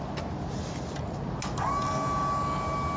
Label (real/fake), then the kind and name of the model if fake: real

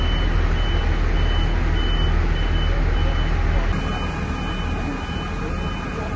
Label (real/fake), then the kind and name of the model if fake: real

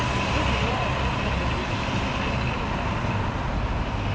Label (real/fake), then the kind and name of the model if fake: real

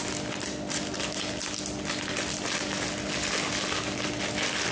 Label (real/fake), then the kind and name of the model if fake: real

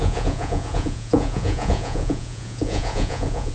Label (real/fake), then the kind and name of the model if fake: fake, vocoder, Vocos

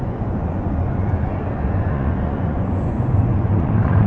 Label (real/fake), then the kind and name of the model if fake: fake, vocoder, Vocos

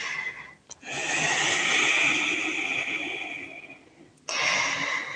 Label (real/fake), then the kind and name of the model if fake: real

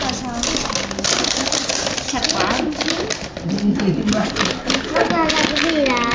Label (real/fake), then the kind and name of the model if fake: real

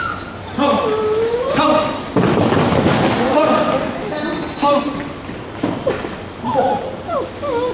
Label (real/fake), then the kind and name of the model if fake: real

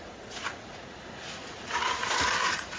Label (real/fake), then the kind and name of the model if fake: fake, vocoder, Vocos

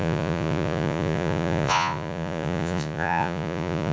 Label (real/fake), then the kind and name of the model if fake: fake, vocoder, Vocos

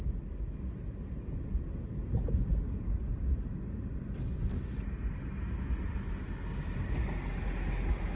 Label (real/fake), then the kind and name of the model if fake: real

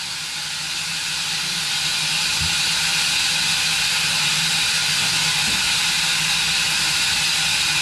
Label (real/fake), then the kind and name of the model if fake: real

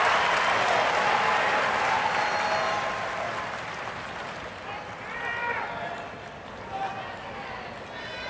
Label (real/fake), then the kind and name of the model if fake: real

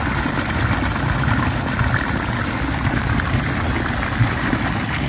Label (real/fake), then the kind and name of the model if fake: real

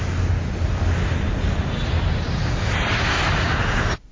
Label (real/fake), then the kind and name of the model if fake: real